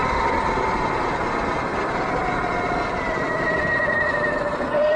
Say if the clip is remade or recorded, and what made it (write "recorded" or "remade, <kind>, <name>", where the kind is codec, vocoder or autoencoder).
recorded